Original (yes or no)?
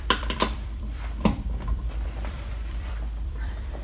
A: no